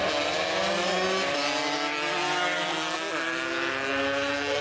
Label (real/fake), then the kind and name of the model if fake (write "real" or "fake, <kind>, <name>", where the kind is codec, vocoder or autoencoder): real